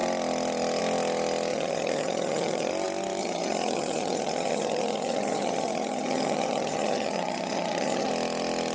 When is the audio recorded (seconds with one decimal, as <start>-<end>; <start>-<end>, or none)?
0.0-1.5; 2.7-3.2; 8.1-8.7